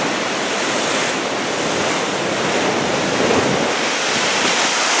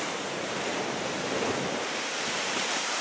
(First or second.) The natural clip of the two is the first